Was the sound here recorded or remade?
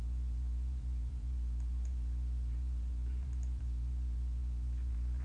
remade